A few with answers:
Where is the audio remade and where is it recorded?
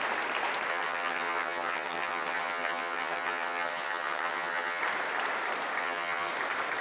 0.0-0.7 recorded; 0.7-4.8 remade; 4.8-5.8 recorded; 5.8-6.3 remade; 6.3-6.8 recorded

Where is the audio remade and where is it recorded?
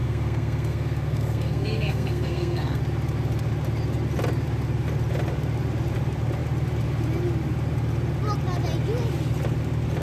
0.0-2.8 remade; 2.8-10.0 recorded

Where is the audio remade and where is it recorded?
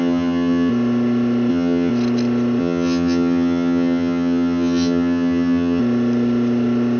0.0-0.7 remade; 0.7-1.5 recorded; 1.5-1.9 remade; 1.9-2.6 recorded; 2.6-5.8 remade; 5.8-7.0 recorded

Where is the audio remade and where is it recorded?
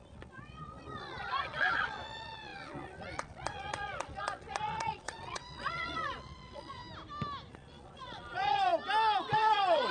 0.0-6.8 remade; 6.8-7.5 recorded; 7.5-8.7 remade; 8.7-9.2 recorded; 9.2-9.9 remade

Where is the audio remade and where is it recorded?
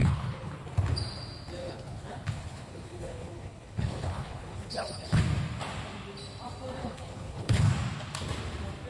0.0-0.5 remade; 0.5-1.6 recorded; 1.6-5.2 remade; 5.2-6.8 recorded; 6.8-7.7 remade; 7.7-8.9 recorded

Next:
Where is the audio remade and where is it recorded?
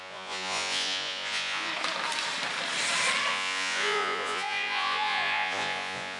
0.0-1.7 remade; 1.7-3.3 recorded; 3.3-6.2 remade